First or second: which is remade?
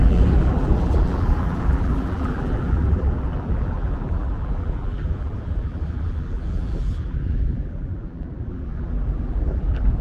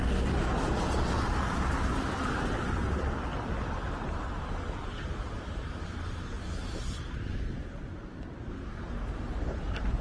first